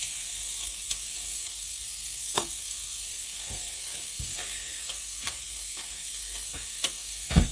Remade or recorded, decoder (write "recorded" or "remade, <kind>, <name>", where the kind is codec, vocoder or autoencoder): remade, codec, SNAC